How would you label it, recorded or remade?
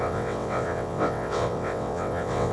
remade